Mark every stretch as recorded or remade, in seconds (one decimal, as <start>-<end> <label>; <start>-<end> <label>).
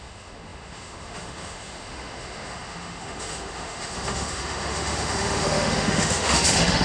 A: 0.0-6.8 remade